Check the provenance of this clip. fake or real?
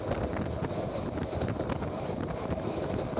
real